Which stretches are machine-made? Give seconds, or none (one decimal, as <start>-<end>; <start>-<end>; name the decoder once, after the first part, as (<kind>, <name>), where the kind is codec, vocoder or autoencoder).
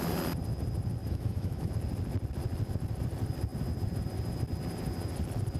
1.0-1.7 (autoencoder, DAC-VAE)